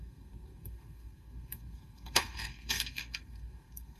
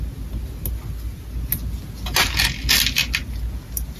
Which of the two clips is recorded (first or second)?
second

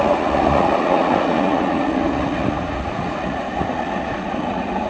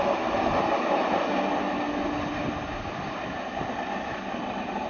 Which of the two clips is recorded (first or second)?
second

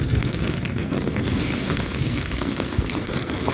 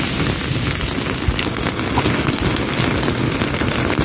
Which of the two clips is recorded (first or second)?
second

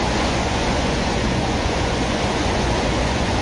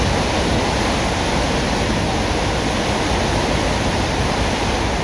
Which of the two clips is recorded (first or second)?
second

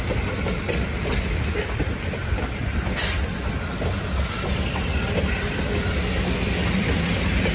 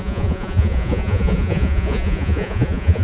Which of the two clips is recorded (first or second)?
first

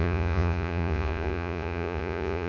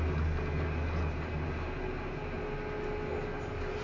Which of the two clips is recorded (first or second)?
second